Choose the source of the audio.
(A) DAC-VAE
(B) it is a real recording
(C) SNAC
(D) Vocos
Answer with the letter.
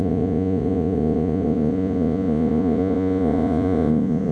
D